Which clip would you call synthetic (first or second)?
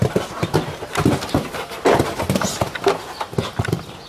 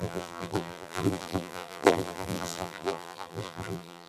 second